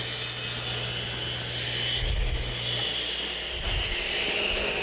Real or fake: real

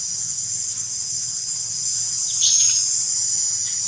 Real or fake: real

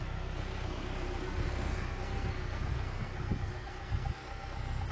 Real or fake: fake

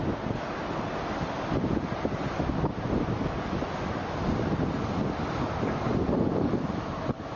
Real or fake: real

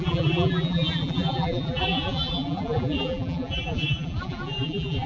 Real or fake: fake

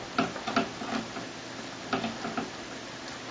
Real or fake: real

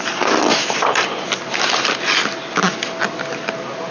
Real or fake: real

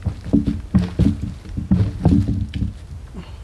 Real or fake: real